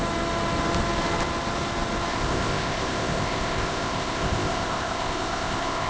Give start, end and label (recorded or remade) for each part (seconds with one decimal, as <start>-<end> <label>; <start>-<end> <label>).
0.0-2.1 recorded; 2.1-5.9 remade

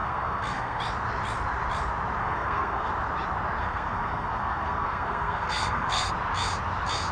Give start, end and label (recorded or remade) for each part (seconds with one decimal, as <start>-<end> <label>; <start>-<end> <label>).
0.0-0.8 remade; 0.8-2.2 recorded; 2.2-2.9 remade; 2.9-3.6 recorded; 3.6-6.1 remade; 6.1-7.1 recorded

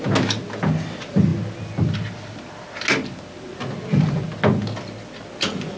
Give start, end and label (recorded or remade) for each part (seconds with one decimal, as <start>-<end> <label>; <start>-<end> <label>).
0.0-5.8 recorded